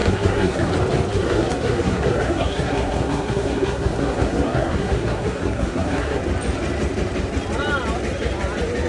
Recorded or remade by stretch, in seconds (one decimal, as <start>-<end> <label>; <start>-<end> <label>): 0.0-0.7 remade; 0.7-1.1 recorded; 1.1-6.2 remade; 6.2-8.9 recorded